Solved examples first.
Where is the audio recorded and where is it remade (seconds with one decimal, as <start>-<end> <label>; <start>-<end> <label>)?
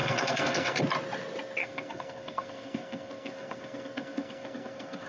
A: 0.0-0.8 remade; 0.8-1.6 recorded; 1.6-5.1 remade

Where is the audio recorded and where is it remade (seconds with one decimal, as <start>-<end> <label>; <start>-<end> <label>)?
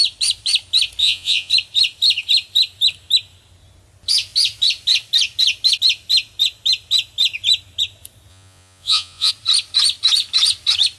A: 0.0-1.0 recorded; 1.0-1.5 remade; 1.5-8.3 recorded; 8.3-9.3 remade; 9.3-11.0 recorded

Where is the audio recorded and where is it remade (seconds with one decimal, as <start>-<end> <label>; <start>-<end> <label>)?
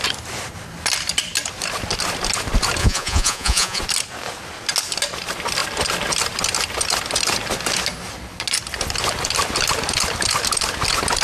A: 0.0-2.8 recorded; 2.8-3.8 remade; 3.8-11.2 recorded